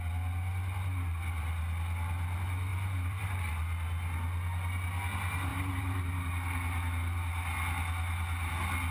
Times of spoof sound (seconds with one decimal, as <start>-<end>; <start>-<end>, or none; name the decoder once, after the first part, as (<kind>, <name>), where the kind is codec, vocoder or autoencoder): 2.7-3.5 (vocoder, BigVGAN v2); 5.5-6.3